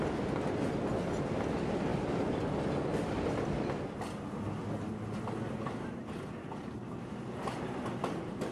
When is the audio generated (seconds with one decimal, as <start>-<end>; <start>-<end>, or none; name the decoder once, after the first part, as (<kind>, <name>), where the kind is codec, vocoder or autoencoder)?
none

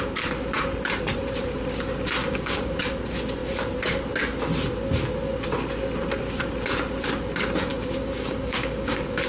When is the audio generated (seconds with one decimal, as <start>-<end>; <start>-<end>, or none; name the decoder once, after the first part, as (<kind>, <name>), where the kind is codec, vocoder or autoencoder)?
2.2-2.8 (codec, DAC); 7.7-9.3

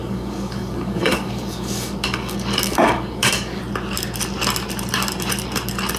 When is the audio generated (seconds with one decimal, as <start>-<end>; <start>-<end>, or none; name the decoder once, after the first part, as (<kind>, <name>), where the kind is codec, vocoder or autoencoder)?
0.0-3.6 (codec, DAC)

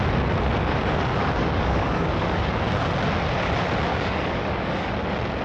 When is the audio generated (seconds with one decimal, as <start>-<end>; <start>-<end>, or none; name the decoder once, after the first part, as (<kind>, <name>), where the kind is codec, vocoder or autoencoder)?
0.6-2.6 (codec, DAC); 3.9-4.9

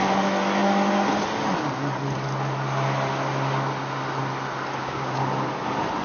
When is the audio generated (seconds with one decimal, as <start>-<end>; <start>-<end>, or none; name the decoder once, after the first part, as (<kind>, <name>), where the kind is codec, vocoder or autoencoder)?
4.8-5.3 (codec, DAC)